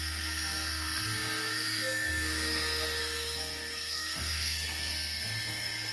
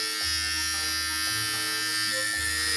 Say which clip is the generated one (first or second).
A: first